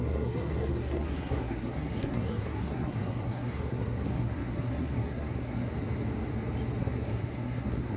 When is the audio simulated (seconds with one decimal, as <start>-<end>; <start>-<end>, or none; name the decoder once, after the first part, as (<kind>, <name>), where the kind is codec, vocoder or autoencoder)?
0.0-5.7 (codec, SNAC); 6.8-8.0